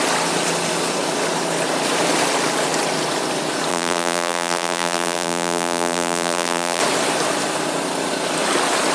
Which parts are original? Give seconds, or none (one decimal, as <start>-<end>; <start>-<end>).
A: 0.0-3.7; 6.8-8.9